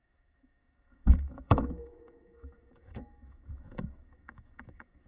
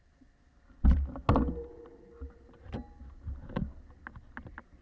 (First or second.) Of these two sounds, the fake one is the first